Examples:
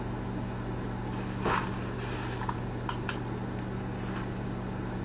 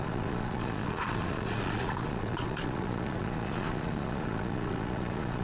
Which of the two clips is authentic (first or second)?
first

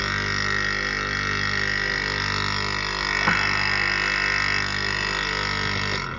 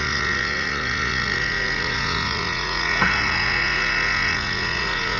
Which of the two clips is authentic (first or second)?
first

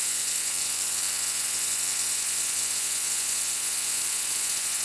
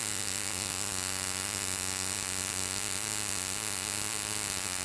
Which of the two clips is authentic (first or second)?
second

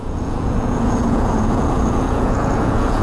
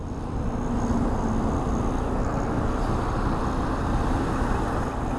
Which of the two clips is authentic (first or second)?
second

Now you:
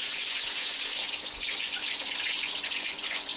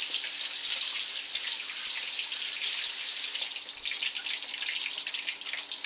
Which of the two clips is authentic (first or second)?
second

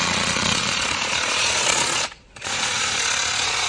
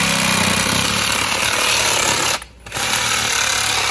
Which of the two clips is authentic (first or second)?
second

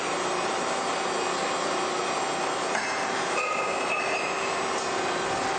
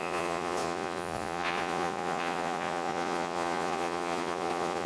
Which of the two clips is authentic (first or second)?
first